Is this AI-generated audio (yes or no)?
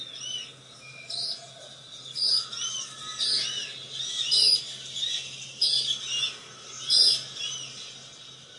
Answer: no